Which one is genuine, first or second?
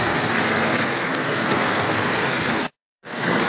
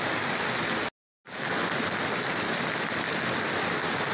second